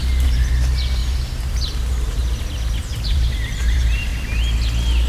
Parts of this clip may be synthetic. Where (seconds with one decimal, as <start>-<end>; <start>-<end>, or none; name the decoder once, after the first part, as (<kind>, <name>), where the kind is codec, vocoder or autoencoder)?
0.0-1.0 (vocoder, BigVGAN v2); 1.5-2.2; 2.8-4.1

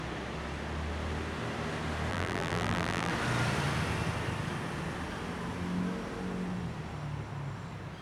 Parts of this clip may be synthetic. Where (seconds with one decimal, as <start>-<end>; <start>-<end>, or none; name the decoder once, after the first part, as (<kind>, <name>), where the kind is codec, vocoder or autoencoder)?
2.1-3.1 (vocoder, BigVGAN v2)

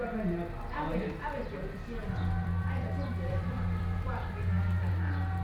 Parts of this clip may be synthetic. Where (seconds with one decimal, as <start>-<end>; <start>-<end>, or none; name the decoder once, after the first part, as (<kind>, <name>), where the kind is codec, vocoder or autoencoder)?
2.0-4.9 (vocoder, BigVGAN v2)

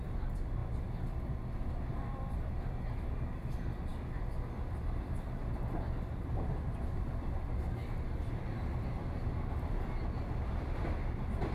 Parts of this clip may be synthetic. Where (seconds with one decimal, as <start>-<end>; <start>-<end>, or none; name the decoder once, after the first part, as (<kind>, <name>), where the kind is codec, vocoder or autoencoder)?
0.0-0.6 (vocoder, BigVGAN v2); 1.7-7.8; 10.4-11.5

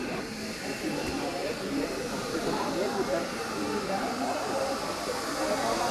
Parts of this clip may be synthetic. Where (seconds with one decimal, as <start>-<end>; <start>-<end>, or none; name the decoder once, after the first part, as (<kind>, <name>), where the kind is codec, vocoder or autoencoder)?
1.4-2.6 (vocoder, BigVGAN v2); 3.7-4.7

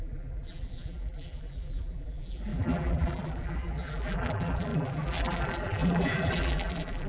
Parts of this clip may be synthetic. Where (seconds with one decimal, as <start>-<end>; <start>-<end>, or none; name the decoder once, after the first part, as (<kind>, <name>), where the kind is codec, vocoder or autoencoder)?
0.0-7.1 (vocoder, BigVGAN v2)

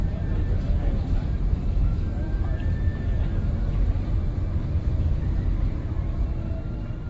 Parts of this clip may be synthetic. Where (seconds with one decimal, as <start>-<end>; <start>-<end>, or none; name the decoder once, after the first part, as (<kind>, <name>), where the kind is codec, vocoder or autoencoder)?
none